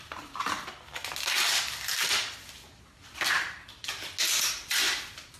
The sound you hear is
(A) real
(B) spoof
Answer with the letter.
A